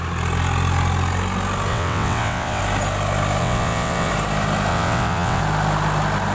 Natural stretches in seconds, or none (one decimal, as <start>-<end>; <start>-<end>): 0.0-1.7; 2.6-3.4; 4.1-4.7; 5.4-6.3